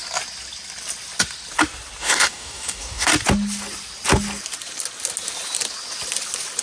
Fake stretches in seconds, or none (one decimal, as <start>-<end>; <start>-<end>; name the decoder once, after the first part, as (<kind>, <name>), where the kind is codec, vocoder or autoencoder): 2.0-3.1 (codec, DAC)